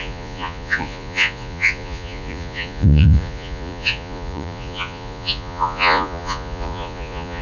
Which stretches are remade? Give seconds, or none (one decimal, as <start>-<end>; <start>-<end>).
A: 0.0-7.4